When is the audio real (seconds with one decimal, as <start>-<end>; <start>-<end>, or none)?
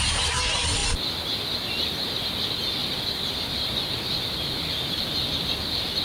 0.0-0.8; 1.5-2.8